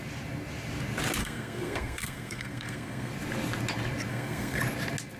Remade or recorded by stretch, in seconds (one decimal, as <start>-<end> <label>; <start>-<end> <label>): 0.0-1.2 recorded; 1.2-3.1 remade; 3.1-4.1 recorded; 4.1-4.6 remade; 4.6-5.2 recorded